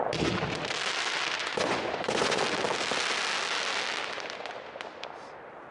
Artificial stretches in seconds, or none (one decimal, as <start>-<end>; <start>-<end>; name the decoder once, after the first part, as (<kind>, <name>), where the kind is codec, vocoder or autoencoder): 1.4-2.4 (vocoder, Vocos)